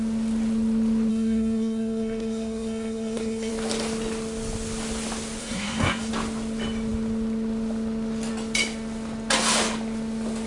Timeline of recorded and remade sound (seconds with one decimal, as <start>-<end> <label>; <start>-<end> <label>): 0.0-1.1 recorded; 1.1-3.5 remade; 3.5-5.4 recorded; 5.4-6.1 remade; 6.1-10.5 recorded